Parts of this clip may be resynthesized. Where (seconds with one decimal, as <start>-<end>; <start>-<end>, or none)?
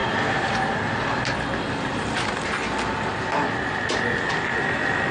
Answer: none